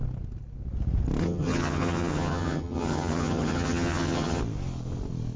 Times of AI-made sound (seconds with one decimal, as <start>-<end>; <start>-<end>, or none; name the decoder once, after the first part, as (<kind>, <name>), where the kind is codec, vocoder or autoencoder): 1.2-4.4 (vocoder, HiFi-GAN)